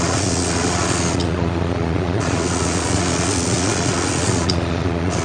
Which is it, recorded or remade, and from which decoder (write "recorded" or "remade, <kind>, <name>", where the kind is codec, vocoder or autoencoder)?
remade, vocoder, Vocos